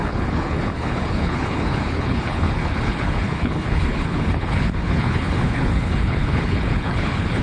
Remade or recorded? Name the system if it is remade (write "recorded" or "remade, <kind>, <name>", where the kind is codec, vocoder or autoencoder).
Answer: remade, codec, HILCodec